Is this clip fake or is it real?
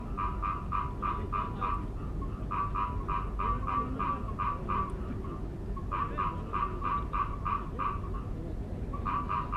real